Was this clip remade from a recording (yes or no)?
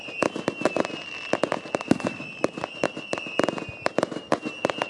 no